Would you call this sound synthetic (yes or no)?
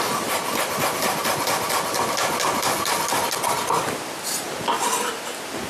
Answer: no